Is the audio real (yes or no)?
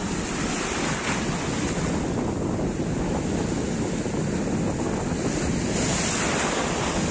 yes